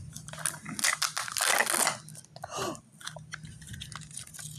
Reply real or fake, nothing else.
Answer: real